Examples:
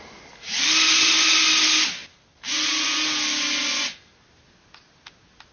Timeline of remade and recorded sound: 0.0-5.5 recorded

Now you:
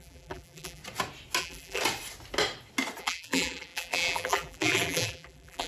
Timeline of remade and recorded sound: 0.0-0.8 remade; 0.8-1.4 recorded; 1.4-1.8 remade; 1.8-3.0 recorded; 3.0-5.7 remade

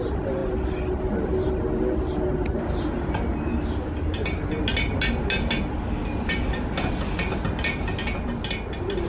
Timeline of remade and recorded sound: 0.0-9.1 recorded

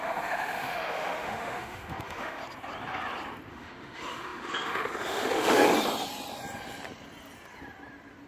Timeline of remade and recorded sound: 0.0-2.4 remade; 2.4-3.5 recorded; 3.5-5.7 remade; 5.7-8.3 recorded